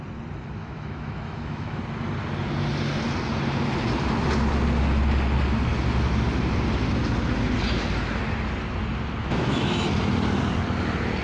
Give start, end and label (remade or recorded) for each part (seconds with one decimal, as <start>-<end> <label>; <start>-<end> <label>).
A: 0.0-0.6 recorded; 0.6-1.8 remade; 1.8-9.2 recorded; 9.2-9.9 remade; 9.9-11.2 recorded